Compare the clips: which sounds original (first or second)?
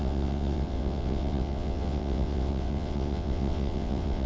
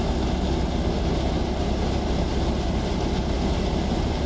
second